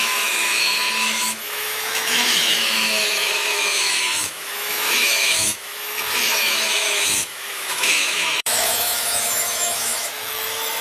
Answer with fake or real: fake